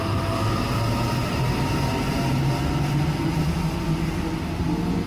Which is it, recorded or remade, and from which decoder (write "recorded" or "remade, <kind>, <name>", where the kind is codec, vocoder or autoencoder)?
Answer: recorded